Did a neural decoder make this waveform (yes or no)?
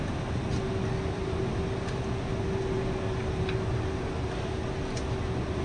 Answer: no